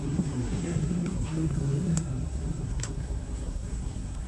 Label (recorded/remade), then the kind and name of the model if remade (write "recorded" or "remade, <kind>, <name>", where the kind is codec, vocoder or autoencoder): remade, codec, SNAC